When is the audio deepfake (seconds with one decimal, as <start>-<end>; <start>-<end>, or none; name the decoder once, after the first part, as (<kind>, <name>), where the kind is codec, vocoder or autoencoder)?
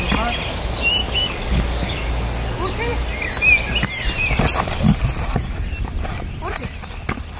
1.0-2.1 (codec, DAC)